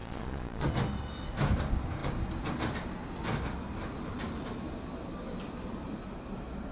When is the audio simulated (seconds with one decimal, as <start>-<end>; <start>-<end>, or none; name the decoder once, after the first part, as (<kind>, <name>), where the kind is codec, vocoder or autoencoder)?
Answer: 0.0-0.7 (vocoder, Vocos)